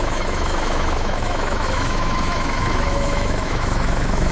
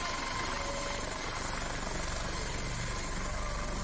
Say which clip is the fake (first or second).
first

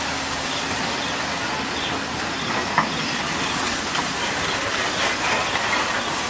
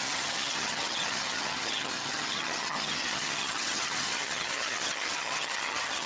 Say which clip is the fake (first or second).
second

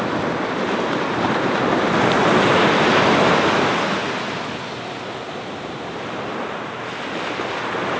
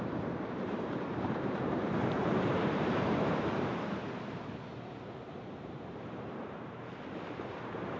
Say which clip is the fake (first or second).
second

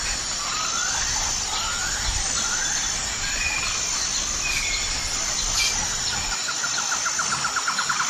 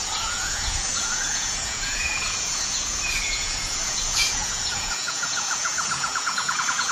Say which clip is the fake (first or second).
second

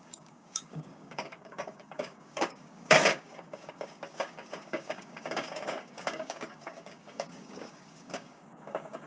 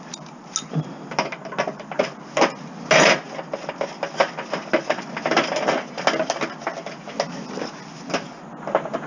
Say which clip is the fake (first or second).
first